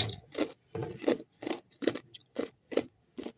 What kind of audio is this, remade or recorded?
remade